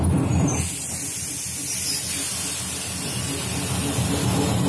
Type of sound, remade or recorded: recorded